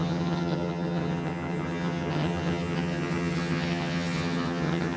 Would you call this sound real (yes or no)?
no